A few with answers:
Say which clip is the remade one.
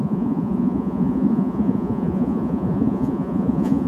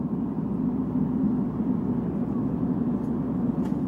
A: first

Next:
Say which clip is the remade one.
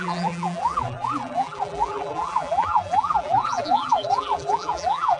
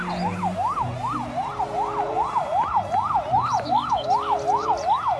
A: first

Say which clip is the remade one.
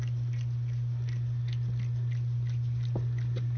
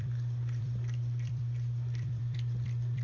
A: second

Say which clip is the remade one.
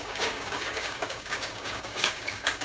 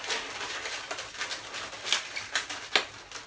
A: first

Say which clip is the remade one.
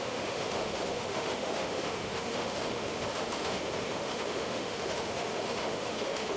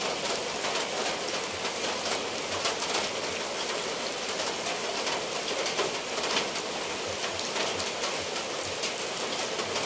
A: first